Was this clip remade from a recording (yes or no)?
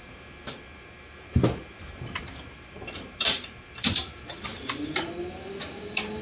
yes